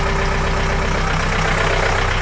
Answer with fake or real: real